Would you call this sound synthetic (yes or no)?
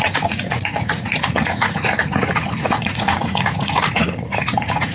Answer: yes